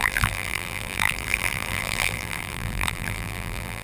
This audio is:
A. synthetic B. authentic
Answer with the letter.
A